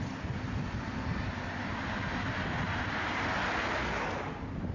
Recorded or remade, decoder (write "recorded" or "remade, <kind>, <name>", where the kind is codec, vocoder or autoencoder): recorded